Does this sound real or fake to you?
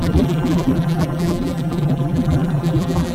fake